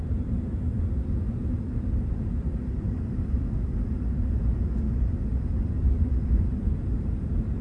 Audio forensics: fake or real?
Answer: fake